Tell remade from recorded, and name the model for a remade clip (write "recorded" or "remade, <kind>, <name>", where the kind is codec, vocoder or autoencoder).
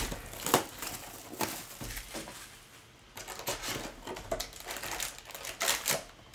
recorded